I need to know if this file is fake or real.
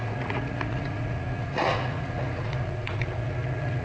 fake